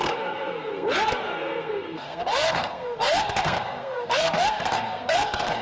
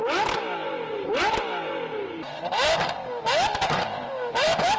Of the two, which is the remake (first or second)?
first